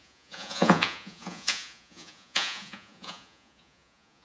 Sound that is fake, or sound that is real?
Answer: fake